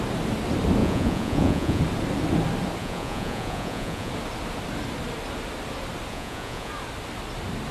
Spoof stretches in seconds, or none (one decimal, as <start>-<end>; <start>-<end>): 0.8-1.8; 2.8-4.1; 6.1-6.7